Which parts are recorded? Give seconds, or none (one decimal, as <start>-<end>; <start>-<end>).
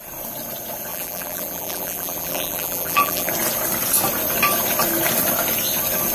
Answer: 0.0-0.9; 3.3-6.1